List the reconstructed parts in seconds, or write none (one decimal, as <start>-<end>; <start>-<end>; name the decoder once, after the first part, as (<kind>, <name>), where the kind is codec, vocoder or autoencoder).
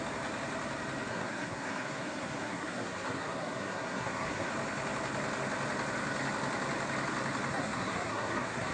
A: 1.1-4.5 (codec, SNAC); 7.5-8.7